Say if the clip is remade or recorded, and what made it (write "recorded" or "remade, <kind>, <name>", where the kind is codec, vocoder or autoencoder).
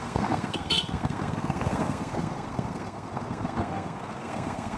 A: remade, codec, SNAC